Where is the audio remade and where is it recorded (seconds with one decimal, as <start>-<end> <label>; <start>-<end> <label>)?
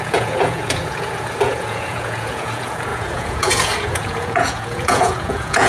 0.0-5.7 remade